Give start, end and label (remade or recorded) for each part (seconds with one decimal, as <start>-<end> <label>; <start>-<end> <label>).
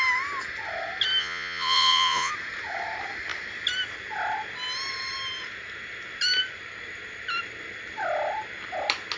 0.0-1.2 recorded; 1.2-2.3 remade; 2.3-9.2 recorded